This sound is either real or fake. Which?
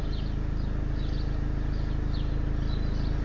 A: real